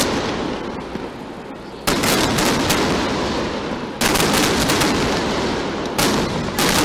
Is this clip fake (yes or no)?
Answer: no